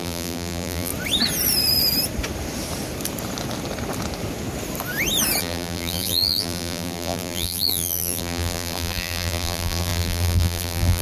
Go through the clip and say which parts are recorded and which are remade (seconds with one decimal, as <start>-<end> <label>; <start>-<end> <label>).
0.0-0.9 remade; 0.9-5.4 recorded; 5.4-11.0 remade